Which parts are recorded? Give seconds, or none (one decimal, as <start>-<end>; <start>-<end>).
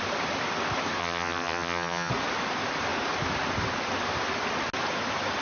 0.0-1.0; 2.1-5.4